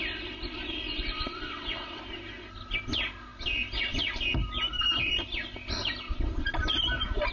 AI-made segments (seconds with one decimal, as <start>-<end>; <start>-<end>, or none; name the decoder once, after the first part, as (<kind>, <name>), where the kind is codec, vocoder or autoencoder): 0.9-2.0 (vocoder, WaveNeXt)